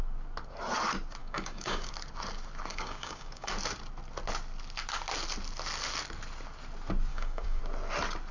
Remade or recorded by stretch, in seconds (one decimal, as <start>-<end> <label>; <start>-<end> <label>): 0.0-1.2 recorded; 1.2-1.9 remade; 1.9-2.7 recorded; 2.7-3.5 remade; 3.5-7.1 recorded; 7.1-7.6 remade; 7.6-8.3 recorded